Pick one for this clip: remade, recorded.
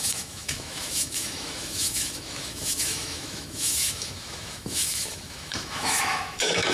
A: remade